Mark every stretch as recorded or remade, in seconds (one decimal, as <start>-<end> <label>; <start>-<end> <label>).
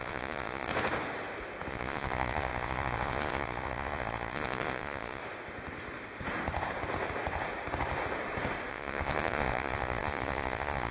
0.0-0.7 remade; 0.7-1.7 recorded; 1.7-5.2 remade; 5.2-8.7 recorded; 8.7-10.9 remade